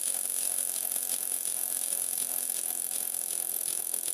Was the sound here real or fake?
fake